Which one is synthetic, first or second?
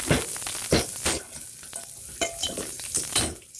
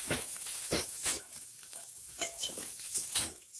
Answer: second